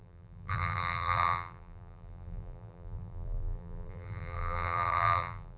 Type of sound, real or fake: fake